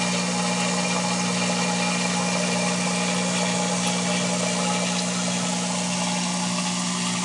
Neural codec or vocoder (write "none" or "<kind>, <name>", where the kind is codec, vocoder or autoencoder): none